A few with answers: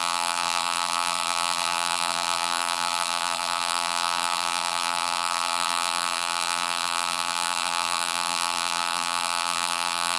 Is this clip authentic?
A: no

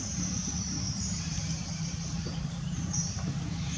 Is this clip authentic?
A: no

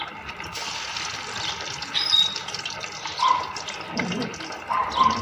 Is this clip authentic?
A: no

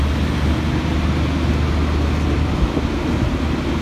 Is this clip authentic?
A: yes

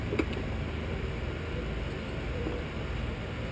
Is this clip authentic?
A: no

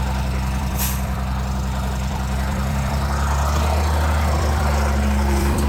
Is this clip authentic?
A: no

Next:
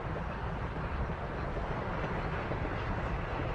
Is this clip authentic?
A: yes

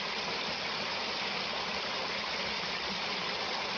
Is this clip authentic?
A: yes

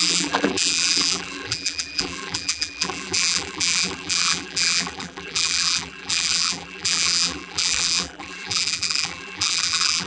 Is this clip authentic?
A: no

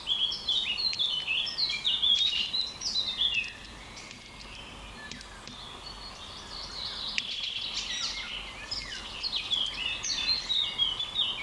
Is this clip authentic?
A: yes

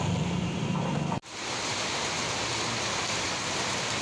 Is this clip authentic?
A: yes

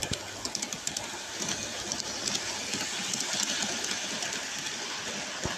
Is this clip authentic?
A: yes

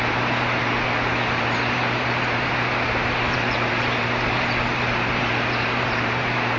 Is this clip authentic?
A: no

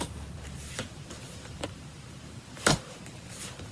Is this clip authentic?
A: no